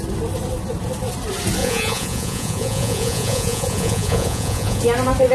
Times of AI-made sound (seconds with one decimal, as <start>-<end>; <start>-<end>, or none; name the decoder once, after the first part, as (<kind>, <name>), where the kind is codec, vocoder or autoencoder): 1.6-4.8 (vocoder, Vocos)